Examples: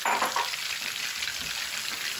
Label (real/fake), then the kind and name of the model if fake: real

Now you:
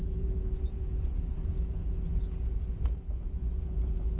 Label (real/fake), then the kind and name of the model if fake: fake, vocoder, Vocos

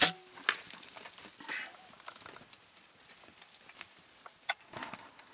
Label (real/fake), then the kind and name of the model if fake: real